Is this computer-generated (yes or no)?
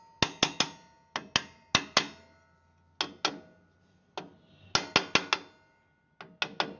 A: no